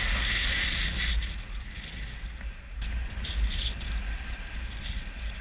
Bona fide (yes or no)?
yes